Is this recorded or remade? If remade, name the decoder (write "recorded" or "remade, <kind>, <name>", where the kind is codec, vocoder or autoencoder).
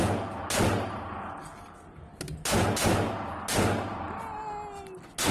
recorded